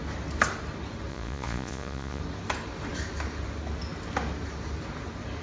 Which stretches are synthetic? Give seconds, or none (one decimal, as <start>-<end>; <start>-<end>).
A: 1.1-2.2